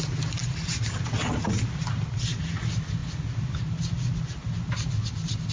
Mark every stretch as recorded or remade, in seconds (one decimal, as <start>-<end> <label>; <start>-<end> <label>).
0.0-5.5 recorded